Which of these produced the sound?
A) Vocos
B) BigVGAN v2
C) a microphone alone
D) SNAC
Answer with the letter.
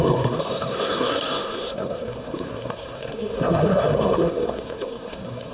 D